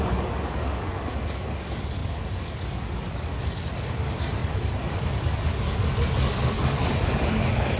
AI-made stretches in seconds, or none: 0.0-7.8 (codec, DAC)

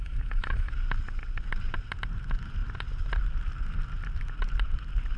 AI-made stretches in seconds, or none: 0.0-0.7 (autoencoder, DAC-VAE)

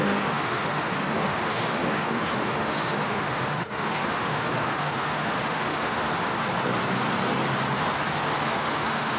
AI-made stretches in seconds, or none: 0.0-6.1 (autoencoder, DAC-VAE); 8.5-9.2

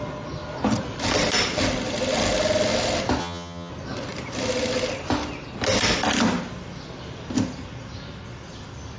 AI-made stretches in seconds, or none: 3.2-3.7 (vocoder, HiFi-GAN)